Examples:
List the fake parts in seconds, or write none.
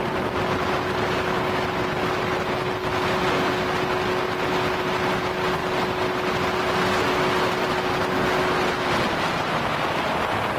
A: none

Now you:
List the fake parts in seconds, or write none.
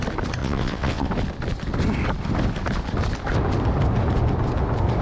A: 0.4-1.1 (vocoder, WaveNeXt)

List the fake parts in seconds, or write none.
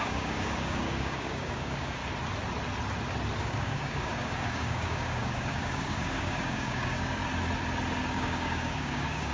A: 0.0-2.0 (codec, DAC); 3.4-7.2; 8.0-9.3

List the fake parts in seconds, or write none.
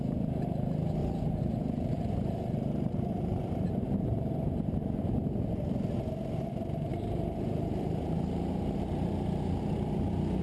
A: 1.0-5.0 (vocoder, BigVGAN v2); 6.9-8.8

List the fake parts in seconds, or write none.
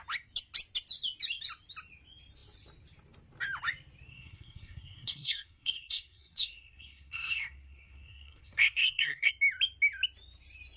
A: 4.1-9.3 (codec, SNAC)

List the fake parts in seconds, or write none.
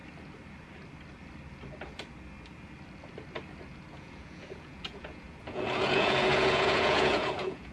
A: 3.9-7.7 (vocoder, Vocos)